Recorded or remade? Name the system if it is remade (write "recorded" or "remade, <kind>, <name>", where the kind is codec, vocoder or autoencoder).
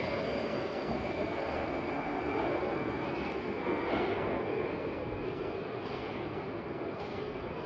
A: remade, codec, SNAC